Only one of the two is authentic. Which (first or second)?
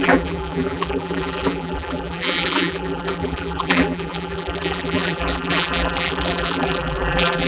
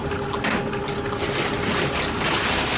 second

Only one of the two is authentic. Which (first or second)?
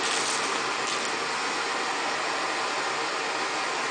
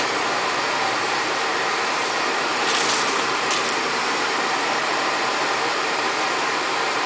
first